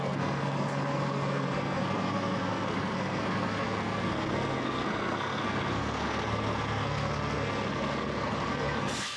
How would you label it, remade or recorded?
remade